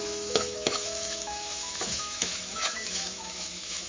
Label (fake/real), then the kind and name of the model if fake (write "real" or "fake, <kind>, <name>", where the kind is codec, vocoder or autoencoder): fake, autoencoder, DAC-VAE